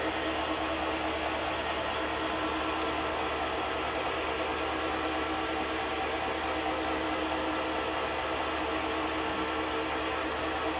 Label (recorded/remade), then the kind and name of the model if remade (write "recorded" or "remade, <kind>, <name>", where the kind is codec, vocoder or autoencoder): recorded